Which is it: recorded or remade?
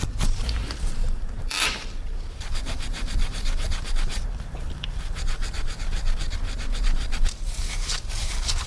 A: remade